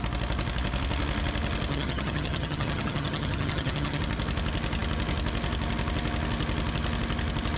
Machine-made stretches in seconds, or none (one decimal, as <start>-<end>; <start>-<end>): 1.7-4.0